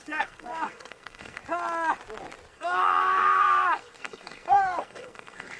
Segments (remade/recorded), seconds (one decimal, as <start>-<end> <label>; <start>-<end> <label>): 0.0-1.4 remade; 1.4-2.5 recorded; 2.5-5.6 remade